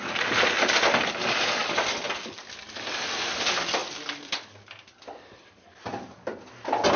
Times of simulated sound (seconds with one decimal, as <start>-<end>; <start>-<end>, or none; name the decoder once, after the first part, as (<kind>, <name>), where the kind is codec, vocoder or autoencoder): none